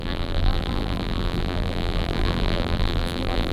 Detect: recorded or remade remade